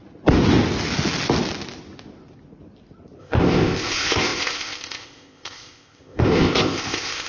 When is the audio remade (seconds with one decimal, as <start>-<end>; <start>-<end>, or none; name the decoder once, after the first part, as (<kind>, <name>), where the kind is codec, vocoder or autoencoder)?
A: 3.2-7.3 (codec, ZipCodec)